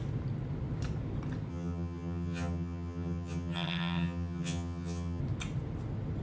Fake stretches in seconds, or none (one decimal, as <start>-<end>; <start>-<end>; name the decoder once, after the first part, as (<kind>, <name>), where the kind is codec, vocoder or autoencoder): 1.5-5.2 (vocoder, HiFi-GAN)